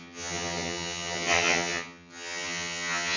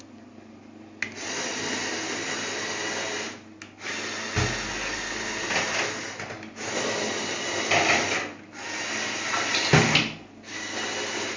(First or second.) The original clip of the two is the second